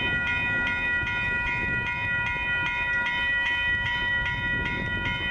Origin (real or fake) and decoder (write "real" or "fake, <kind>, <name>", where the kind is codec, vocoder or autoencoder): real